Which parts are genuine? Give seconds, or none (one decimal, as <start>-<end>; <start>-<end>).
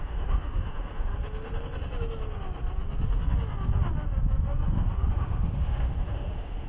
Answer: 1.1-5.1